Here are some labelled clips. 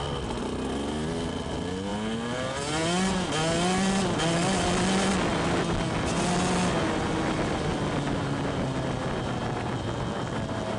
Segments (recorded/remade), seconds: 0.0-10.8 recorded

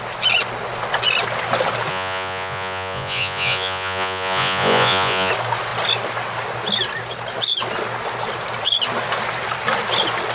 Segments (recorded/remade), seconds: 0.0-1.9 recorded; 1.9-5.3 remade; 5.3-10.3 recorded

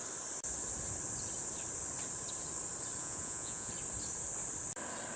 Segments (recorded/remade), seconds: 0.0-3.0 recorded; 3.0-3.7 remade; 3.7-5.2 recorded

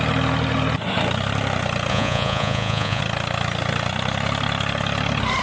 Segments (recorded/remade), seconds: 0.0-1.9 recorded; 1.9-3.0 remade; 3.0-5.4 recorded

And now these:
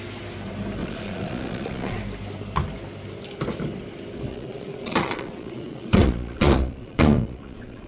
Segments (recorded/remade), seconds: 0.0-0.8 recorded; 0.8-2.0 remade; 2.0-4.3 recorded; 4.3-7.9 remade

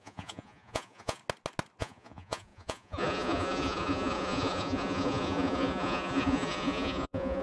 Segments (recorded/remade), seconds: 0.0-1.2 remade; 1.2-1.8 recorded; 1.8-7.4 remade

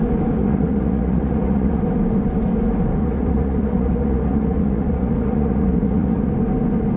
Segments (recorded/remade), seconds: 0.0-0.4 recorded; 0.4-1.8 remade; 1.8-3.0 recorded; 3.0-6.3 remade; 6.3-7.0 recorded